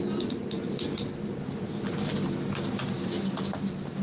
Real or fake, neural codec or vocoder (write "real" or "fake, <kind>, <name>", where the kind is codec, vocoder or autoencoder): real